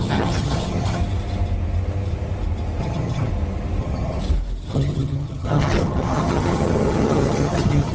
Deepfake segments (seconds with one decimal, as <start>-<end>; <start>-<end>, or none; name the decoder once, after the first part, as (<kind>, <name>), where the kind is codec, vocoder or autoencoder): 0.0-1.0 (vocoder, HiFi-GAN); 2.8-3.3; 3.8-4.2; 4.7-7.9